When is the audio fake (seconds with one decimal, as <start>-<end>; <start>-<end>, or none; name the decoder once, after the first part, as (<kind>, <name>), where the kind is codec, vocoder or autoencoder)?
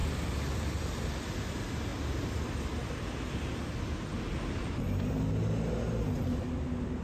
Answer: 4.1-5.3 (vocoder, BigVGAN v2)